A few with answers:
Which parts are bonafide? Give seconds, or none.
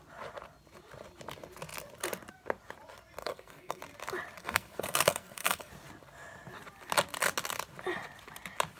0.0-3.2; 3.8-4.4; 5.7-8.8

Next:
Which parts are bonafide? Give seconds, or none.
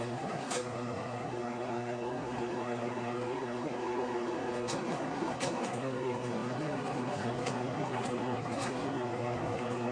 none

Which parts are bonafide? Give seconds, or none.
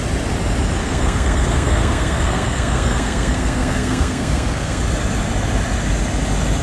0.0-0.8; 4.8-6.6